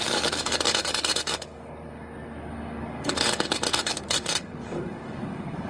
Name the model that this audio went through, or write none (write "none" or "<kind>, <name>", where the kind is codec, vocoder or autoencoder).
codec, DAC